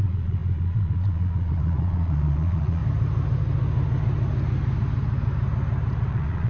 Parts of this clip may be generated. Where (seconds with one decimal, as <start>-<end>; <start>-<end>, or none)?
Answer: 0.0-2.8; 6.1-6.5